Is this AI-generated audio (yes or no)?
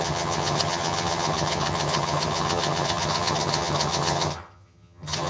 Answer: yes